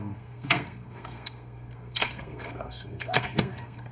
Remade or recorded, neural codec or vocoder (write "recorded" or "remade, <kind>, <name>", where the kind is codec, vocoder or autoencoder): remade, codec, SNAC